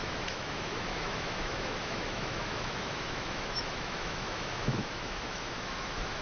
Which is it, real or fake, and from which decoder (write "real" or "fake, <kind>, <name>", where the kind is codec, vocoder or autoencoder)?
fake, autoencoder, DAC-VAE